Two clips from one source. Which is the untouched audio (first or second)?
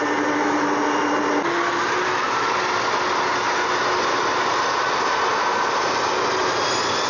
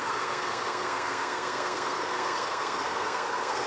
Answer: first